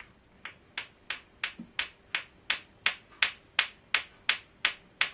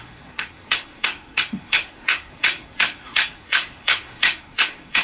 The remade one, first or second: second